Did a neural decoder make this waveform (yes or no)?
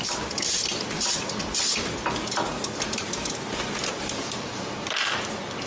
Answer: yes